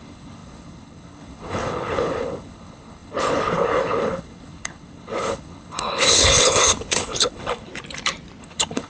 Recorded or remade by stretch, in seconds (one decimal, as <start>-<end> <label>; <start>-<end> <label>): 0.0-7.7 remade; 7.7-8.4 recorded; 8.4-8.9 remade